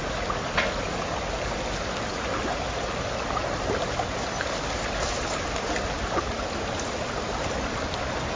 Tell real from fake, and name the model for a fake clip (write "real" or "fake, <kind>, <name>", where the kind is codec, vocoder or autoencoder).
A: real